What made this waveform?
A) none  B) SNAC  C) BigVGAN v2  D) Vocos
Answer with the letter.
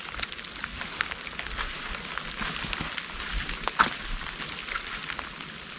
A